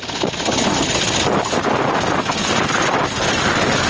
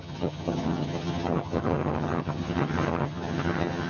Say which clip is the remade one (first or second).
second